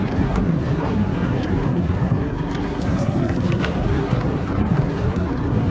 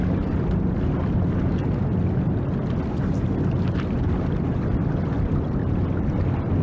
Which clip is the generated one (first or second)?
first